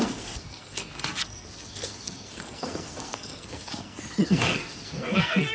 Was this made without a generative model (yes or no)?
no